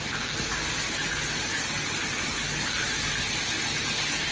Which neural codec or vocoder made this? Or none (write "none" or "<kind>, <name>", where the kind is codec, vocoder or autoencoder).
none